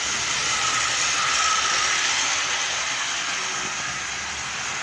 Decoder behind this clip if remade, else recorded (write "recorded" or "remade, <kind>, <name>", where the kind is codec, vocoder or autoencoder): recorded